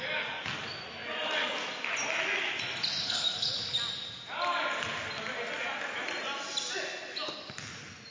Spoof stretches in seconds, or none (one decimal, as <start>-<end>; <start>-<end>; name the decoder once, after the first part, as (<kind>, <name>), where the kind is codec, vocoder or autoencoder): none